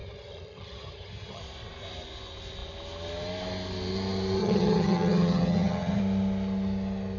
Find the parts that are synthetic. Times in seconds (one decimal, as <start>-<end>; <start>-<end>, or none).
0.0-1.4; 4.4-6.0